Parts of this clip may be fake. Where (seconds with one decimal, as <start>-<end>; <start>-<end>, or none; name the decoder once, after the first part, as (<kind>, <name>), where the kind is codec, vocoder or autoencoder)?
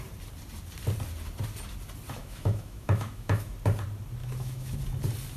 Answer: 2.2-3.5 (autoencoder, DAC-VAE); 4.2-4.8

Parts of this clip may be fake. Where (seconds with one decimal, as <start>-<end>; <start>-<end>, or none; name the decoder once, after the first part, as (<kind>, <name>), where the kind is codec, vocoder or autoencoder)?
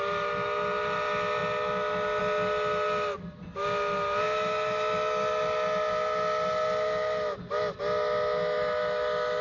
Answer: none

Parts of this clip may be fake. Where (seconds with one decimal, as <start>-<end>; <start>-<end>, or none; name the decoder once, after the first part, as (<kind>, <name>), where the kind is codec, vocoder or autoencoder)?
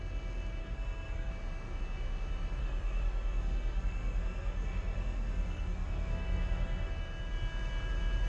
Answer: 0.6-1.3 (codec, SNAC); 2.6-6.9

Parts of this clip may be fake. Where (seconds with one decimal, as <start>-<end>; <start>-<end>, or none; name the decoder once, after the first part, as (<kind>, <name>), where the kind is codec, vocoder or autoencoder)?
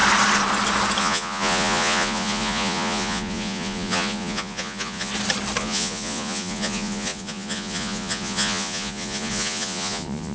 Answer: 1.0-5.1 (vocoder, Vocos); 5.6-10.3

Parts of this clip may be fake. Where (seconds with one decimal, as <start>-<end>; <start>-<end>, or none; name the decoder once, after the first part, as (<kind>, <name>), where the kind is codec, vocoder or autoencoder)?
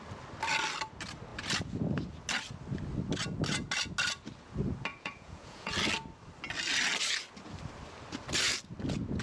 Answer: 4.9-5.7 (vocoder, Vocos)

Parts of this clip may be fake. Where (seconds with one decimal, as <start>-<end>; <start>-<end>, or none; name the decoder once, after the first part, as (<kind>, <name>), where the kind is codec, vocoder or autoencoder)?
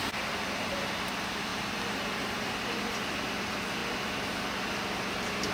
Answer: none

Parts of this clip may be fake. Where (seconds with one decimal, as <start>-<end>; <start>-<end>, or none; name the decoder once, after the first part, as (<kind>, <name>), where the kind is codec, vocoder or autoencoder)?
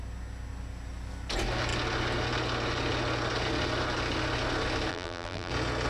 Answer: 4.9-5.5 (vocoder, BigVGAN v2)